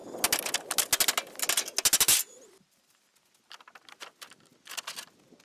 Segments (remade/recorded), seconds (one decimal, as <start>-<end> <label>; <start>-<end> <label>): 0.0-5.4 recorded